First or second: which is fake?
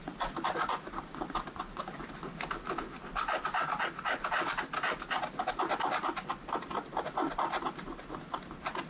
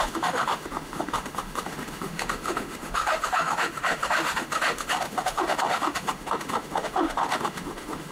second